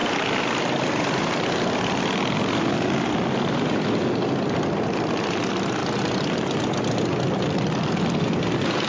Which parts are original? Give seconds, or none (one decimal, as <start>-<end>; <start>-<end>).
0.0-8.9